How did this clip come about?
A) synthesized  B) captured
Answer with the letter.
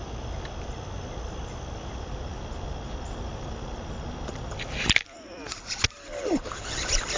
B